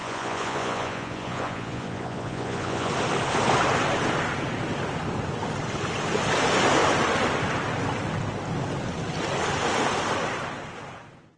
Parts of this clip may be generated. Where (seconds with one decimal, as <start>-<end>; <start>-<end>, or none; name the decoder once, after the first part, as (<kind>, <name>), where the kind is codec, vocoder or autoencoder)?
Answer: 0.0-2.9 (vocoder, Vocos)